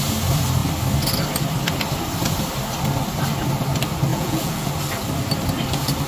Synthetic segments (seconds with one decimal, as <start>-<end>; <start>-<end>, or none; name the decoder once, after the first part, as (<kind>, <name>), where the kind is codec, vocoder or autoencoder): 4.1-4.7 (vocoder, Vocos)